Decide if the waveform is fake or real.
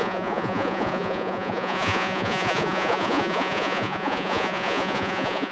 fake